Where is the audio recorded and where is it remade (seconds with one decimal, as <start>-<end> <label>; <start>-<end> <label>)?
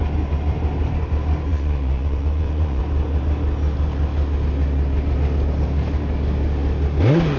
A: 0.0-1.5 recorded; 1.5-2.8 remade; 2.8-7.4 recorded